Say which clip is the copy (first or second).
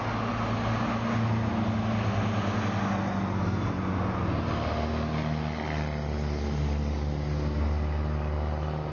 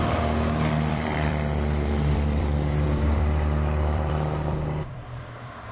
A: second